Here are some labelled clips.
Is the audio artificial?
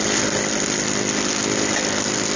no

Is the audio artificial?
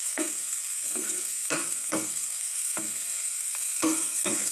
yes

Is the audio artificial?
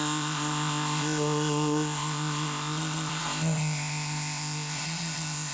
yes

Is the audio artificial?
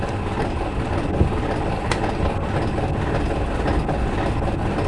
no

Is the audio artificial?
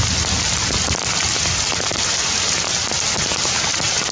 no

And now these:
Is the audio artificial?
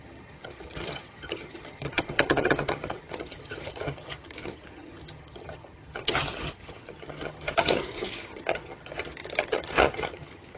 yes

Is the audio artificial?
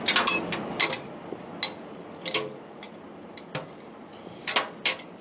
no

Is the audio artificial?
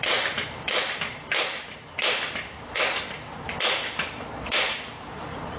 yes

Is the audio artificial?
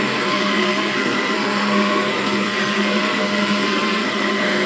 yes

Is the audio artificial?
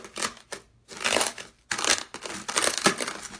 no